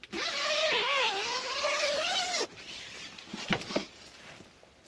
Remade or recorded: recorded